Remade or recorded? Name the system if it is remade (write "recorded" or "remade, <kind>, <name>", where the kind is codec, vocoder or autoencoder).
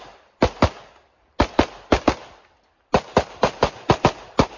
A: recorded